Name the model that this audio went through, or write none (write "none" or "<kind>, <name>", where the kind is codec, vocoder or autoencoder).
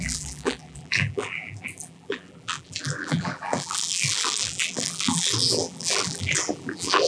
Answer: vocoder, BigVGAN v2